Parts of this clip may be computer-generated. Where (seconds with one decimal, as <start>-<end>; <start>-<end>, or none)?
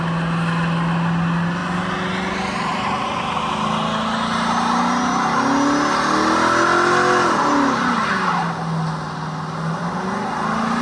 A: none